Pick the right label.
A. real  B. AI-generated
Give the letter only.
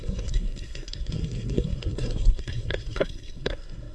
B